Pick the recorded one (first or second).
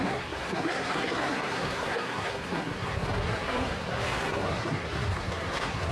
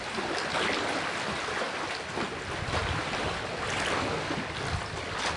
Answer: second